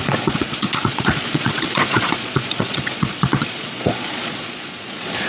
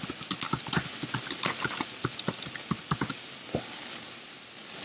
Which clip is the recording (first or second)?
second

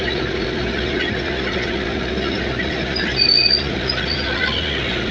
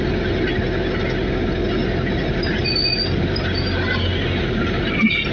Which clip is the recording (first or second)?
second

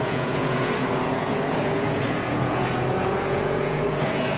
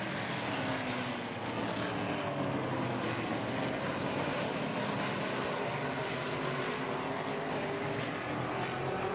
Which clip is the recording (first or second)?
second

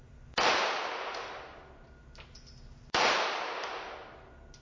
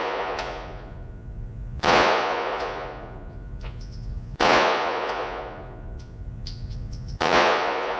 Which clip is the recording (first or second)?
first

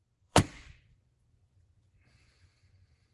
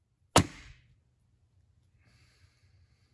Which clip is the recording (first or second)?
second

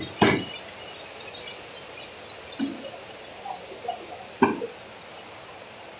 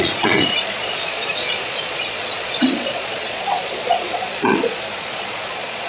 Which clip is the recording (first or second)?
first